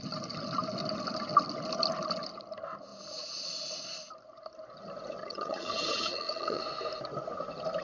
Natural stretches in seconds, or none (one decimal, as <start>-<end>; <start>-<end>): 0.0-5.2; 6.6-7.8